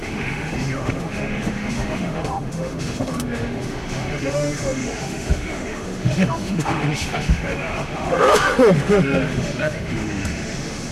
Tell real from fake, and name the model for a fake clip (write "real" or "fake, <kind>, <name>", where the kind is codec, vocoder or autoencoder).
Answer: fake, autoencoder, DAC-VAE